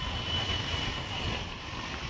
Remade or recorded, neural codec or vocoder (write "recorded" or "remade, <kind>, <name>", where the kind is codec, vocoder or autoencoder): recorded